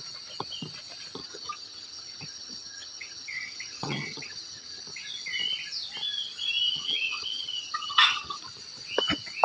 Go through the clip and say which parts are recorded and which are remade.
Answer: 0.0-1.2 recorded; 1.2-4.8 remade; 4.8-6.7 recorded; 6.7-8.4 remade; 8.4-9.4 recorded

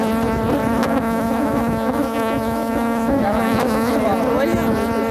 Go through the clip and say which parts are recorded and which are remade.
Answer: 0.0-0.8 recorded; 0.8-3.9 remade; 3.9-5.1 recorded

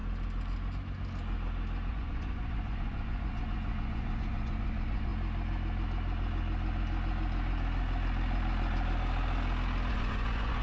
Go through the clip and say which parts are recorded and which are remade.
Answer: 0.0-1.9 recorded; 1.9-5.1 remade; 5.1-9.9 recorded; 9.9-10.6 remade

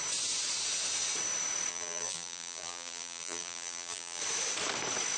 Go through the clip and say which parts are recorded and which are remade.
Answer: 0.0-1.7 recorded; 1.7-4.2 remade; 4.2-5.2 recorded